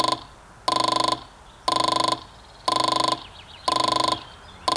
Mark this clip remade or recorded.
recorded